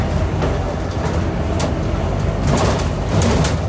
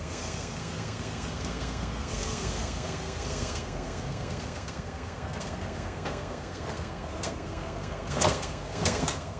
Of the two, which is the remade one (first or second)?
second